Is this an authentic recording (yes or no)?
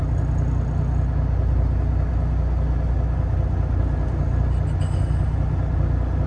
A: yes